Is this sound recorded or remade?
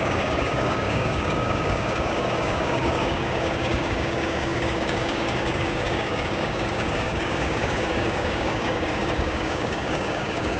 remade